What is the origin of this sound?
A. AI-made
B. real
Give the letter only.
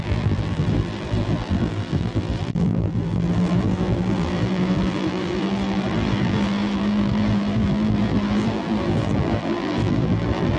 A